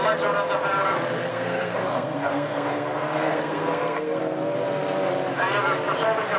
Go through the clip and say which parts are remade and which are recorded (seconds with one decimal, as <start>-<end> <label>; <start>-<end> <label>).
0.0-1.3 recorded; 1.3-4.2 remade; 4.2-6.4 recorded